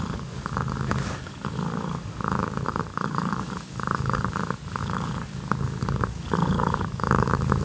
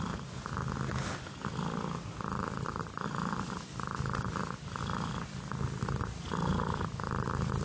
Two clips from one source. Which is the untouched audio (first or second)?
second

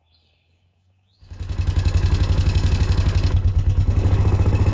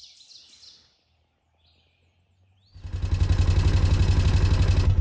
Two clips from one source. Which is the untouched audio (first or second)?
second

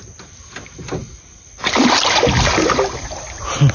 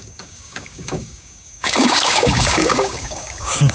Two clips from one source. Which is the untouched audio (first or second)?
first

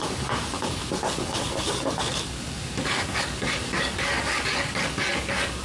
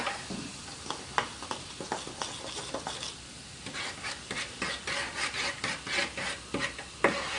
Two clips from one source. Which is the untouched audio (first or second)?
second